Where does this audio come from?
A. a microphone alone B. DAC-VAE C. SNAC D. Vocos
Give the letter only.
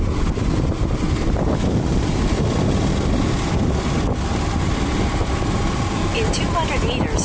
A